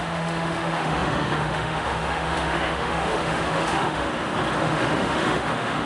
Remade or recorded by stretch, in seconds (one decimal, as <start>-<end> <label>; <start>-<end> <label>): 0.0-4.1 remade; 4.1-4.6 recorded; 4.6-5.9 remade